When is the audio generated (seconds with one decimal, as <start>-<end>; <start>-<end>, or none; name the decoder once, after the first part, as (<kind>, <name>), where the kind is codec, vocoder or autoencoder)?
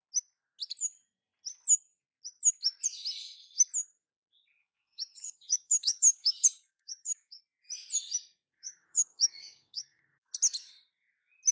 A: 4.6-7.4 (codec, DAC); 8.5-10.3